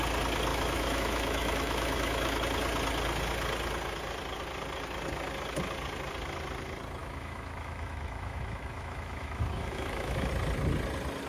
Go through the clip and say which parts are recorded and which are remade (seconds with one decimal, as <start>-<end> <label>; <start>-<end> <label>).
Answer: 0.0-0.5 recorded; 0.5-2.4 remade; 2.4-7.0 recorded; 7.0-10.3 remade; 10.3-11.3 recorded